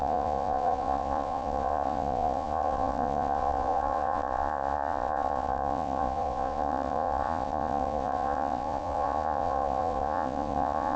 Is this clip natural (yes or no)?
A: no